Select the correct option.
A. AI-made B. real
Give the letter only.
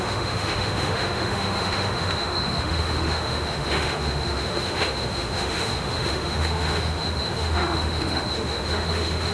A